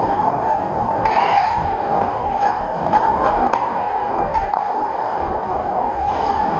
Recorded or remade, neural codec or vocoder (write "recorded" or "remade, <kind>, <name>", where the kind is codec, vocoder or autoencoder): remade, codec, DAC